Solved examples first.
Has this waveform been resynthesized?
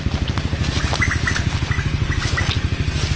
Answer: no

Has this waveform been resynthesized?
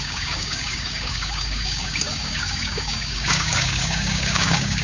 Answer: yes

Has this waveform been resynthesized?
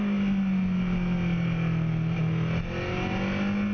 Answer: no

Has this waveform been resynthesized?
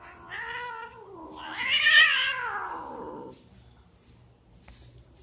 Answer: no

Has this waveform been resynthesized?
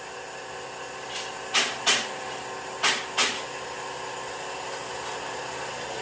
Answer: no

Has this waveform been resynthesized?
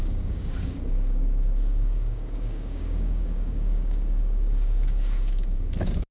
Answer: yes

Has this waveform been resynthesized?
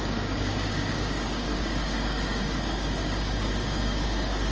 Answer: yes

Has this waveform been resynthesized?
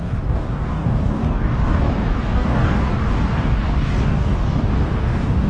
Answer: yes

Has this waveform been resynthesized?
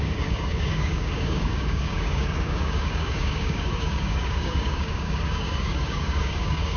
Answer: yes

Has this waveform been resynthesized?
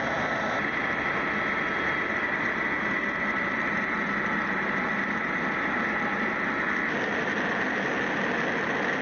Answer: no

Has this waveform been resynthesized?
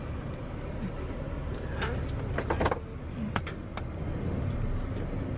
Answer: no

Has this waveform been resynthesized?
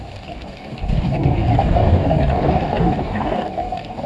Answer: yes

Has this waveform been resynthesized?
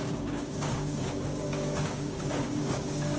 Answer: yes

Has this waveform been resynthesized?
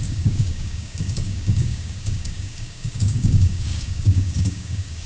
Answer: yes